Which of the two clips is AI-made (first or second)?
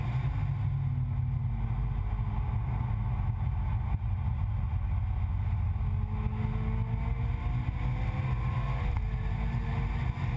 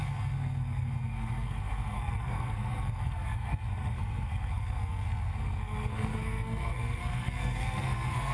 second